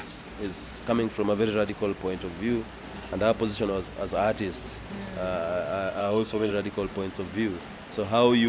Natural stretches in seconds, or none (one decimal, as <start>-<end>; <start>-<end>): 0.0-6.0; 6.5-8.5